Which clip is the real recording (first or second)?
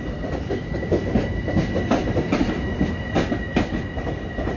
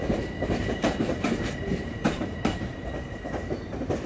first